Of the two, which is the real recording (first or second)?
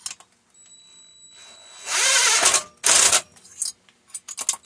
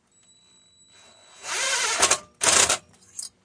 first